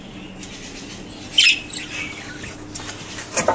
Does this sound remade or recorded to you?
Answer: recorded